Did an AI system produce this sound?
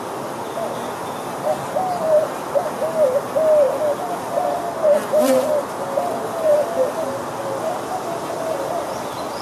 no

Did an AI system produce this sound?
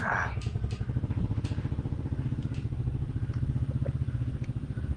no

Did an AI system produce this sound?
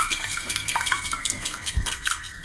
yes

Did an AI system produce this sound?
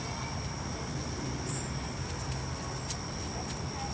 no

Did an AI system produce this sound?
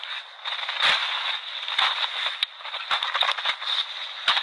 no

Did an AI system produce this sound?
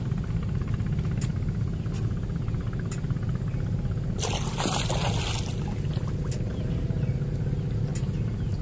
no